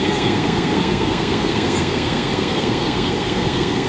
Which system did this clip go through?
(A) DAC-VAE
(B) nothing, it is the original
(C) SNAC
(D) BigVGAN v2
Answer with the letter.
C